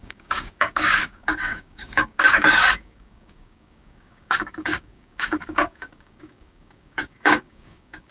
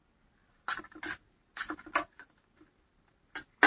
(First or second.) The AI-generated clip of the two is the first